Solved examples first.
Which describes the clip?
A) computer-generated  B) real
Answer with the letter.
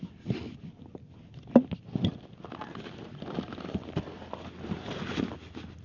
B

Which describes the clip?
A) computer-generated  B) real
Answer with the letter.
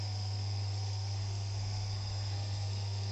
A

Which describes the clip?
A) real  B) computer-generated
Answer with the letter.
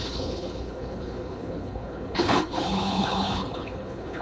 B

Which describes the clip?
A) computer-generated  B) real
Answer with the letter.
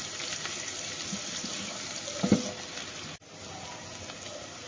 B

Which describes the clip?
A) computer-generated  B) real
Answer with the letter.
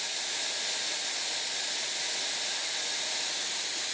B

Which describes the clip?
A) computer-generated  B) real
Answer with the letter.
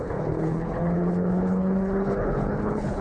A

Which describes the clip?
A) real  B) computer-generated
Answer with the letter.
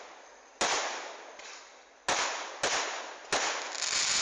A